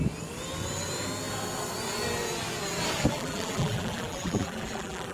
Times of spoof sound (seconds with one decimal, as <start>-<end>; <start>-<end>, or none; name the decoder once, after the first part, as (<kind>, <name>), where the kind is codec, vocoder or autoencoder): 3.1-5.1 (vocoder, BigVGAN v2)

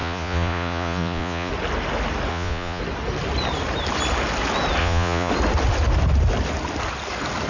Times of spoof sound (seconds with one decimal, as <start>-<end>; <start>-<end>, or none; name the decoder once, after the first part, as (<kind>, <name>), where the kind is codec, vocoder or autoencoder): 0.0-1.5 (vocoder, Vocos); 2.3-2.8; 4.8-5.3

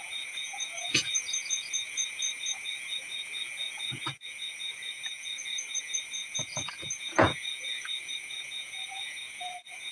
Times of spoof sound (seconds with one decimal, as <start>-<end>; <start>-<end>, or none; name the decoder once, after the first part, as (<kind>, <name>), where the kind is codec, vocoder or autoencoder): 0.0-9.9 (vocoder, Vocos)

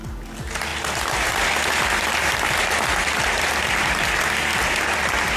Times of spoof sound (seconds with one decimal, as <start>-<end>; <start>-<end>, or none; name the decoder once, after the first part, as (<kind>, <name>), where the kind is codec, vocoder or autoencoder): 0.7-3.6 (vocoder, BigVGAN v2); 4.5-5.4

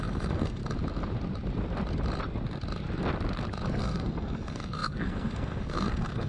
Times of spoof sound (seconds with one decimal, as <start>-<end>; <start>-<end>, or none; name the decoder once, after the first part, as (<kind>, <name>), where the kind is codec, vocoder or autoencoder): 0.0-0.6 (codec, SNAC); 3.8-6.3

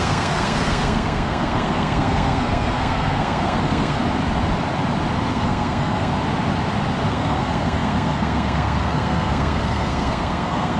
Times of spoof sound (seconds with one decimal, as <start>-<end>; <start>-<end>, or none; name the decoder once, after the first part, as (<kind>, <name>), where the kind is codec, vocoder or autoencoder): 0.0-4.0 (codec, SNAC); 5.3-6.1; 7.1-10.8

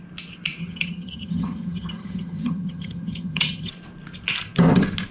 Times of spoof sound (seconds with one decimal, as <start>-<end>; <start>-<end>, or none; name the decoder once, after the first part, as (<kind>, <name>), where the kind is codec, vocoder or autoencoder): 0.6-3.7 (vocoder, HiFi-GAN)